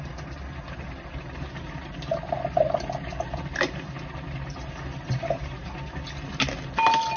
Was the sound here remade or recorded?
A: recorded